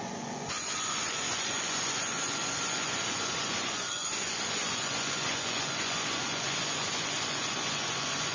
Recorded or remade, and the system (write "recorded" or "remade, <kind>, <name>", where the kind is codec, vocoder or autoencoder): remade, vocoder, Vocos